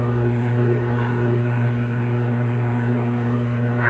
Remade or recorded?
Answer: remade